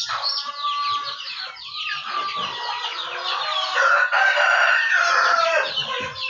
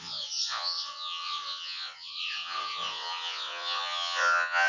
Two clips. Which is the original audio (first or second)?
first